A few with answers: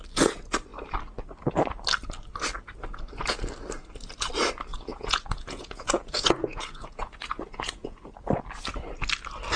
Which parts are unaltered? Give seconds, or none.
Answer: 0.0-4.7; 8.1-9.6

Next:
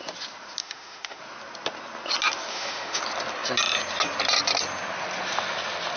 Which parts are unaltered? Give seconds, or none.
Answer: 0.0-0.6; 1.2-2.5; 3.0-6.0

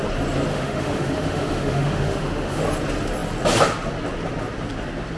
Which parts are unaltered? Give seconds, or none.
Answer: 0.0-0.5; 2.6-5.2

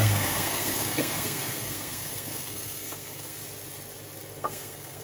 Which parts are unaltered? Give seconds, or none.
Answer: 3.4-4.4

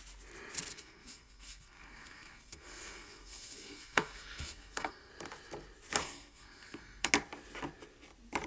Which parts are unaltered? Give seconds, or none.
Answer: 0.0-0.7; 5.1-6.0; 7.1-8.5